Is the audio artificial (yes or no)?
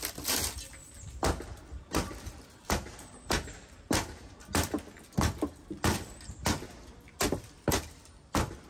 no